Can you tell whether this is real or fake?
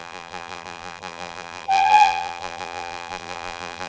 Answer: fake